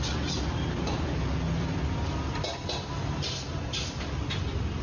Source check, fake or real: real